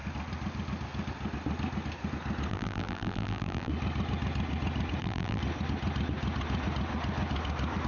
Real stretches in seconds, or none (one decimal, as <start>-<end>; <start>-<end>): 0.0-2.5; 3.7-5.0; 5.4-7.9